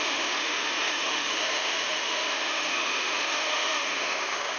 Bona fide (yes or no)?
no